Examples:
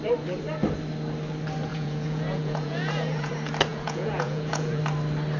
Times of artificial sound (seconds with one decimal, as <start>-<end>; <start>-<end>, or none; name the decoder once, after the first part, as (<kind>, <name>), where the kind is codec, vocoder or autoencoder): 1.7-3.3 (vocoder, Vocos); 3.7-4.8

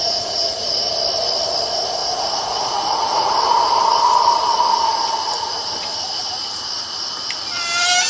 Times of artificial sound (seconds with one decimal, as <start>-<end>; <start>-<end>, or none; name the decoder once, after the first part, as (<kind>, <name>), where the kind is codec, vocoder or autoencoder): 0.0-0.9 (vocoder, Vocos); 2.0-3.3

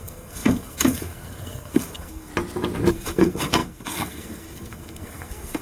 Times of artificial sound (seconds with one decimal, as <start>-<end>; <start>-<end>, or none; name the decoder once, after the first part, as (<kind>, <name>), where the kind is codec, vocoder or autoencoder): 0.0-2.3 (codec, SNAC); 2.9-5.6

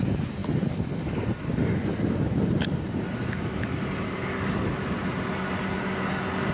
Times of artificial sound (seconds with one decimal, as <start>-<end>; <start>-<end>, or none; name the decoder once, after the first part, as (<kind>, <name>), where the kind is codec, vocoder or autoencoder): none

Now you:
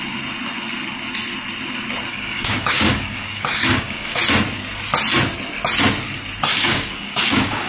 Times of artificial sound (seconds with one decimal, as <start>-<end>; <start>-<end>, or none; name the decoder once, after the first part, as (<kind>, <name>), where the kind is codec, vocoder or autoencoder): 2.1-4.2 (codec, DAC); 6.5-7.7

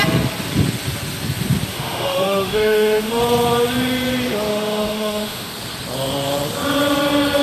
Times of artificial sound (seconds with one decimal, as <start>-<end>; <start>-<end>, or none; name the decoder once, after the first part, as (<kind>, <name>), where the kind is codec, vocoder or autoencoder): 1.7-3.2 (autoencoder, DAC-VAE); 4.5-5.5